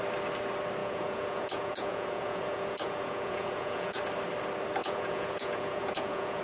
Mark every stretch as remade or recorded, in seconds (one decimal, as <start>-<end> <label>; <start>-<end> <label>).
0.0-0.8 recorded; 0.8-4.0 remade; 4.0-4.8 recorded; 4.8-6.4 remade